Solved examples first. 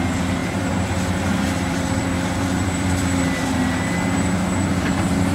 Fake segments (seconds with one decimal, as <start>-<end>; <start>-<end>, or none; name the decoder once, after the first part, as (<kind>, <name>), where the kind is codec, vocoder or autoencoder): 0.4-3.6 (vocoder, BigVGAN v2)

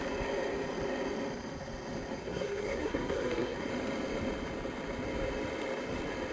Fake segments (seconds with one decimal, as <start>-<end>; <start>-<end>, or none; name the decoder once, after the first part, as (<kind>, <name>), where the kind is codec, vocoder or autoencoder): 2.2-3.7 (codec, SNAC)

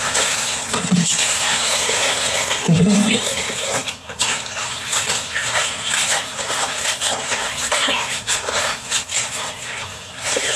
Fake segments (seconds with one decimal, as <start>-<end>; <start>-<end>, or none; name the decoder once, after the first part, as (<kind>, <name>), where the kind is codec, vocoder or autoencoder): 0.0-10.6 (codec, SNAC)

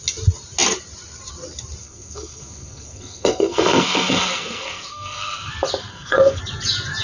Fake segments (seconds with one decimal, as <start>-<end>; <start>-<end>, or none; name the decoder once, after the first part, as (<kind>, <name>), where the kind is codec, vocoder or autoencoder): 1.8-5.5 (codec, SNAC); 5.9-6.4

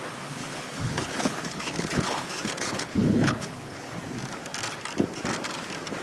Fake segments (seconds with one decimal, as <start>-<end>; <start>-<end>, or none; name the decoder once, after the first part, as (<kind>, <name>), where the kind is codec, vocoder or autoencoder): 0.4-4.0 (codec, HILCodec)